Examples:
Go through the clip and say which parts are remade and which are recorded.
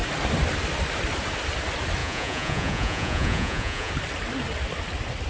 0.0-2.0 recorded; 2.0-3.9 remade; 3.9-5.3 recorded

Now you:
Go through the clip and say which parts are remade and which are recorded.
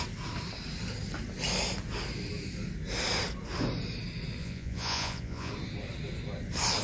0.0-4.4 recorded; 4.4-5.5 remade; 5.5-6.8 recorded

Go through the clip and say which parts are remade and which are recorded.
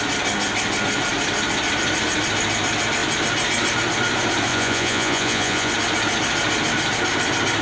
0.0-4.5 recorded; 4.5-5.7 remade; 5.7-7.6 recorded